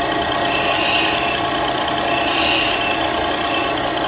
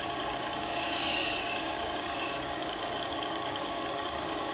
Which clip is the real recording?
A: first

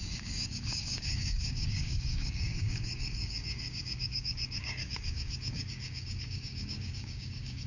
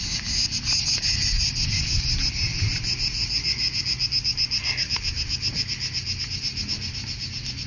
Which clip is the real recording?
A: second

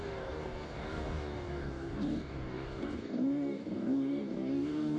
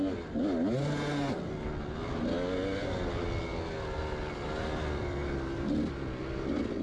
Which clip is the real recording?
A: second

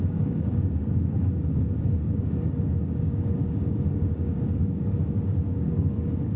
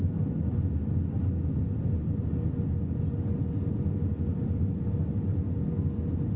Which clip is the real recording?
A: second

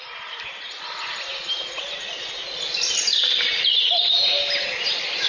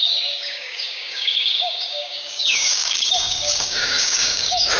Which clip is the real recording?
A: first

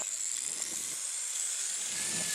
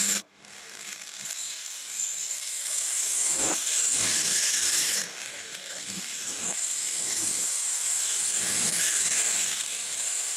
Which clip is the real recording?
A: first